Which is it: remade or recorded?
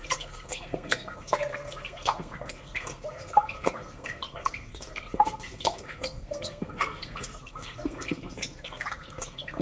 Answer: remade